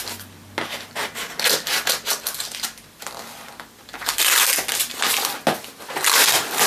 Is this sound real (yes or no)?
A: yes